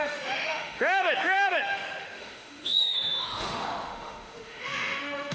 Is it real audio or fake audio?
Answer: fake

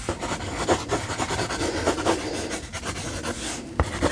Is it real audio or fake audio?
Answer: real